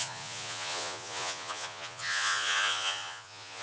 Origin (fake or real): fake